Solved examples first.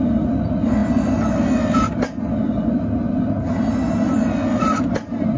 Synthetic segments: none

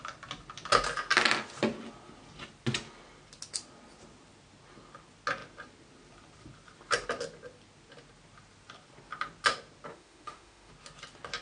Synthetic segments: 9.9-10.7 (autoencoder, DAC-VAE)

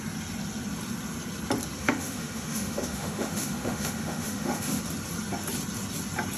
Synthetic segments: 1.8-4.8 (autoencoder, DAC-VAE)

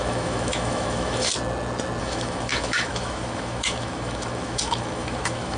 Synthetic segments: 0.0-1.3 (autoencoder, DAC-VAE); 2.0-5.6